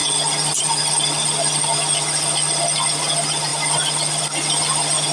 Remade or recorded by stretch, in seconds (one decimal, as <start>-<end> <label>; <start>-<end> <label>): 0.0-5.1 recorded